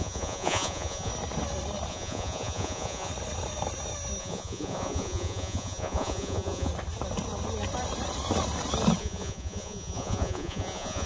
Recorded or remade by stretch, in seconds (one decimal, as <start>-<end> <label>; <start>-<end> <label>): 0.0-1.1 remade; 1.1-1.9 recorded; 1.9-3.1 remade; 3.1-4.2 recorded; 4.2-6.7 remade; 6.7-9.0 recorded; 9.0-11.1 remade